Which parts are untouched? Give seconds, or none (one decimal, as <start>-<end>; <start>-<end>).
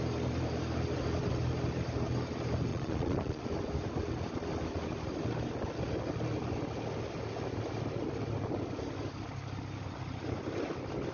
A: 0.0-2.7; 3.4-11.1